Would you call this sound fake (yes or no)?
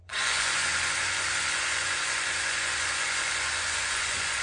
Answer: yes